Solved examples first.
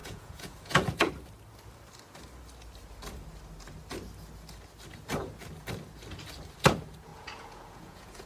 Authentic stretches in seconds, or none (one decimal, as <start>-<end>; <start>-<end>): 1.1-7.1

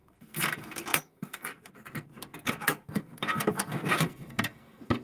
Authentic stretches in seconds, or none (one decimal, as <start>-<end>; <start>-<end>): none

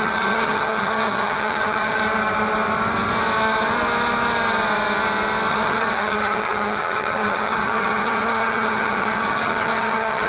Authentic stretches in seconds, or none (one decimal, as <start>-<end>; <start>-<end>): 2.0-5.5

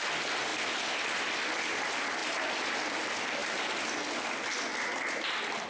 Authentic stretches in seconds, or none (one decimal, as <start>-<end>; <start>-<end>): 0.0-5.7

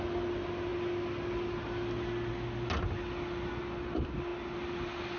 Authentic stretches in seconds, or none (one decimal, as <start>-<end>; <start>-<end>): 0.0-5.2

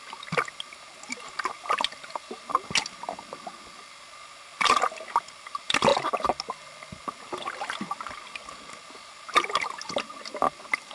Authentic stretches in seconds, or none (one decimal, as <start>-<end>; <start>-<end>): 0.0-10.9

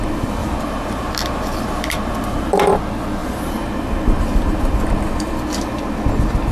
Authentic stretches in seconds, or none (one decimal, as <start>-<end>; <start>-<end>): 0.0-0.4; 2.7-3.2; 4.9-6.5

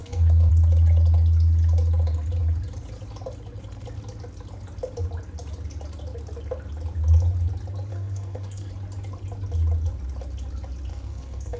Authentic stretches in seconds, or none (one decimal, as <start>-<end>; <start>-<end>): 0.5-7.9; 8.7-10.9